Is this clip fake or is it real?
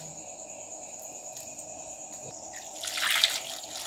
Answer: real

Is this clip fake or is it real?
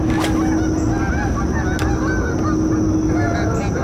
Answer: real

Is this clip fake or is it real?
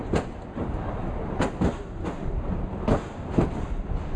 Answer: real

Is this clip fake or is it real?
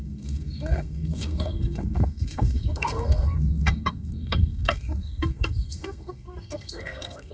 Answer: fake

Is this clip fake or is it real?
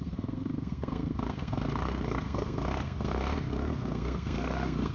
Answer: fake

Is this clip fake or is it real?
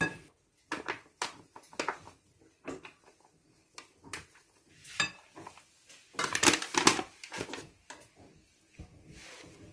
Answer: real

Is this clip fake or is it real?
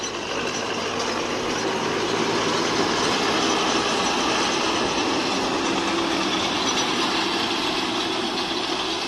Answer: real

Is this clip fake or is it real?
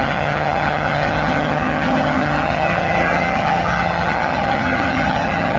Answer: fake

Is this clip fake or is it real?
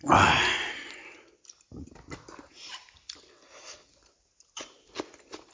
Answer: real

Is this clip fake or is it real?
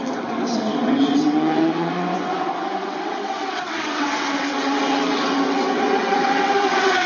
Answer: fake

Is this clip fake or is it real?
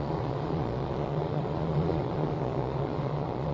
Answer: fake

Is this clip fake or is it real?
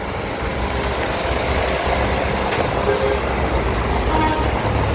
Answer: real